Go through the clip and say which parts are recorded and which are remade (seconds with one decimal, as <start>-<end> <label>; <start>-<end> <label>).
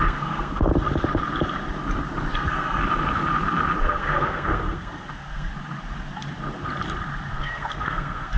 0.0-0.7 remade; 0.7-2.3 recorded; 2.3-2.8 remade; 2.8-3.8 recorded; 3.8-5.5 remade; 5.5-7.3 recorded; 7.3-8.4 remade